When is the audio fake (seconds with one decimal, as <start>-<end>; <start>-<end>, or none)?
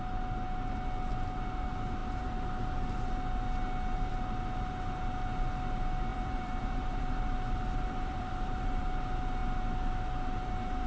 6.1-8.8